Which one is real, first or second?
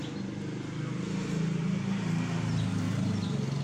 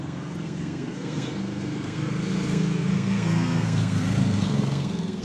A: first